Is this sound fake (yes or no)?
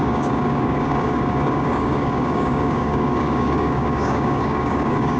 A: yes